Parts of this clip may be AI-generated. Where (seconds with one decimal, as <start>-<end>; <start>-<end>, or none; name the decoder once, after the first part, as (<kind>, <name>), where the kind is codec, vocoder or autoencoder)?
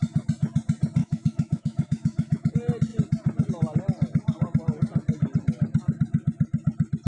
1.0-2.5 (autoencoder, DAC-VAE)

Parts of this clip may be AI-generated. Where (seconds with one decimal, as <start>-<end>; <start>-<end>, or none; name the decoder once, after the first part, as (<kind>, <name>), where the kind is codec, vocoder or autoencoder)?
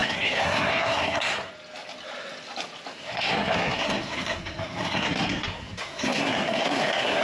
0.0-1.5 (codec, SNAC); 2.9-7.2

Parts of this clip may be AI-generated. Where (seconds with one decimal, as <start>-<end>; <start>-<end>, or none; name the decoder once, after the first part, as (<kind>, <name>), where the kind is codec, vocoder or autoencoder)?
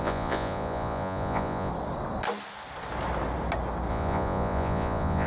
0.0-1.7 (vocoder, Vocos); 3.9-5.3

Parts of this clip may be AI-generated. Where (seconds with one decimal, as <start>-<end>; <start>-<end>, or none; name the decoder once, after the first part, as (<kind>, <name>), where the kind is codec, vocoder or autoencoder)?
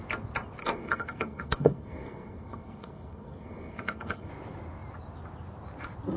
0.6-4.3 (codec, SNAC)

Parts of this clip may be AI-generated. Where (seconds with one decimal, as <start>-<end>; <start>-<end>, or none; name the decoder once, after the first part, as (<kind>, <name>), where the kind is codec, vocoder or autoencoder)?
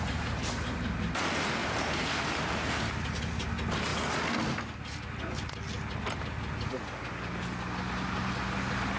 none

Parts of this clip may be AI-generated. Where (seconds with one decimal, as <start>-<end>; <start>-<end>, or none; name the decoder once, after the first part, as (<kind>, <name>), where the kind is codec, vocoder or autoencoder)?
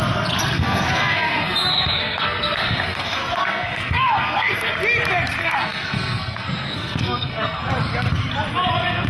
0.4-4.7 (codec, SNAC); 5.4-7.7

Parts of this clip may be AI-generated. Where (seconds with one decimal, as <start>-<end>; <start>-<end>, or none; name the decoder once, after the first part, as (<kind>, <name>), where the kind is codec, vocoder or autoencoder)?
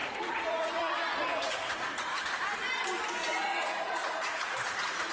0.0-2.1 (vocoder, Vocos); 3.2-5.1